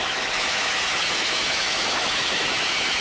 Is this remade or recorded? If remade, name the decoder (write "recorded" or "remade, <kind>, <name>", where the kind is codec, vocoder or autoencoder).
remade, autoencoder, DAC-VAE